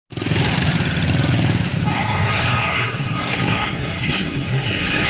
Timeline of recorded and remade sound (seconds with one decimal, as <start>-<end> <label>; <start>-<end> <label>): 0.0-1.9 recorded; 1.9-5.1 remade